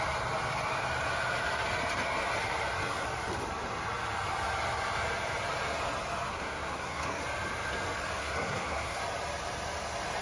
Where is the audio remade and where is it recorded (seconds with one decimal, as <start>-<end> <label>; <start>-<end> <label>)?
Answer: 0.0-6.3 recorded; 6.3-7.2 remade; 7.2-8.2 recorded; 8.2-9.0 remade; 9.0-10.2 recorded

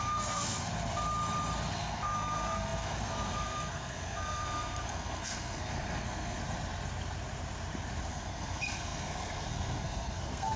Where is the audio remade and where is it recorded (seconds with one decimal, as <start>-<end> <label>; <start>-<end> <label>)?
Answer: 0.0-0.7 remade; 0.7-1.7 recorded; 1.7-6.4 remade; 6.4-8.1 recorded; 8.1-10.6 remade

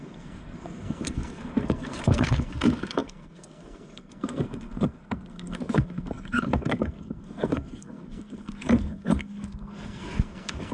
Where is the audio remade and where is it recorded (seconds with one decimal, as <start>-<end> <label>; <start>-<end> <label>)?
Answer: 0.0-10.7 remade

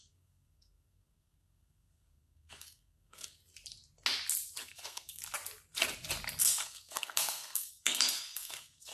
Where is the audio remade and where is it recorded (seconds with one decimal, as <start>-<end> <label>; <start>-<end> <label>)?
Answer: 0.0-3.4 remade; 3.4-4.6 recorded; 4.6-5.2 remade; 5.2-6.4 recorded; 6.4-8.9 remade

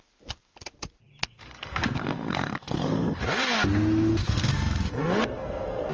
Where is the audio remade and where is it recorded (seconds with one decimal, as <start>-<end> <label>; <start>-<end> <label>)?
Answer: 0.0-1.2 recorded; 1.2-3.2 remade; 3.2-4.2 recorded; 4.2-5.9 remade

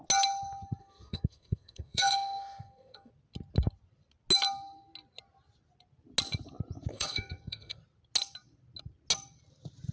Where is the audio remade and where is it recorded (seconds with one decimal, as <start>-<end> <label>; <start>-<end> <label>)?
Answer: 0.0-0.8 recorded; 0.8-3.1 remade; 3.1-6.9 recorded; 6.9-7.8 remade; 7.8-9.9 recorded